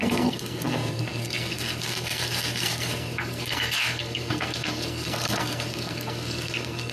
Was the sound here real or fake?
fake